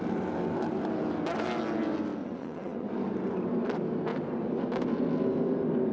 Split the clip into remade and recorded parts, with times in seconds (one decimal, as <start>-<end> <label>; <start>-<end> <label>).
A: 0.0-2.2 recorded; 2.2-2.9 remade; 2.9-5.9 recorded